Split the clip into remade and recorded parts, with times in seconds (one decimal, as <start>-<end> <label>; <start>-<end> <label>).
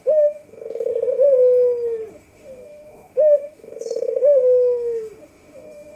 0.0-0.9 remade; 0.9-2.1 recorded; 2.1-6.0 remade